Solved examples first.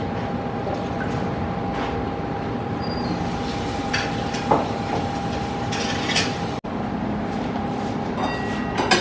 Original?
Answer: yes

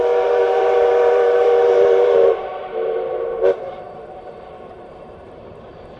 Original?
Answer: no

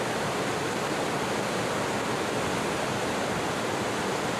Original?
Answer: yes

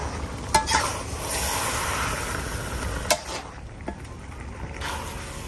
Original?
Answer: yes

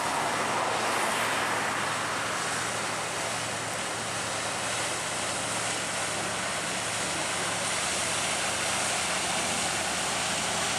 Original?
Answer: yes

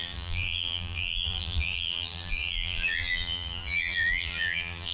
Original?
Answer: no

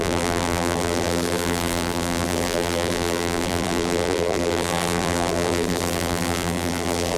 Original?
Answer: no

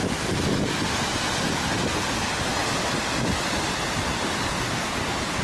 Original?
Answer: yes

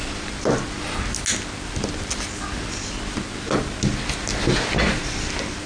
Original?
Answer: yes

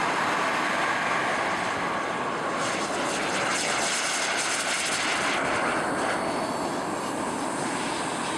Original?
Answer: yes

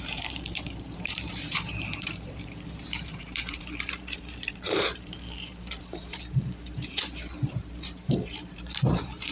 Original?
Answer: no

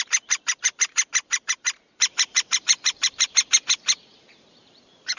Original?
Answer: no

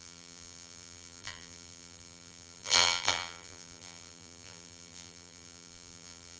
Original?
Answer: no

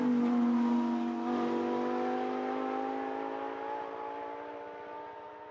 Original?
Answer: yes